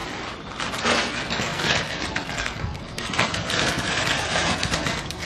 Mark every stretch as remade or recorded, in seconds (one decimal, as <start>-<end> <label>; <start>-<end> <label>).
0.0-0.7 recorded; 0.7-5.3 remade